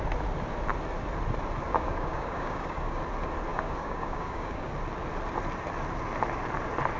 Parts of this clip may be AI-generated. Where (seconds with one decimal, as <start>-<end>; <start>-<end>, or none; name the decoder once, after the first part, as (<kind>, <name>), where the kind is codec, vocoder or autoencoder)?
1.7-3.0 (codec, DAC); 3.5-4.7